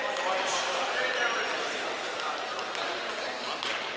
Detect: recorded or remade recorded